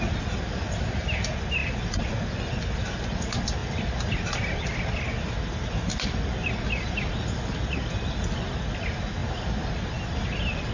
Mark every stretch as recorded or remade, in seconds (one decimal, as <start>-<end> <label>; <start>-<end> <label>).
0.0-10.7 recorded